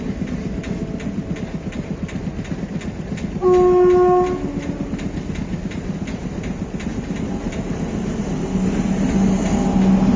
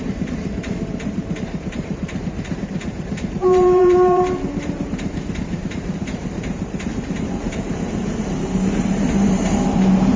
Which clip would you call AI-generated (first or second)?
second